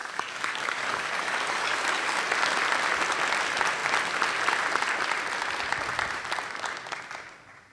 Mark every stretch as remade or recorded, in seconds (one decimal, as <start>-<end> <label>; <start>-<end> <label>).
0.0-2.2 remade; 2.2-7.7 recorded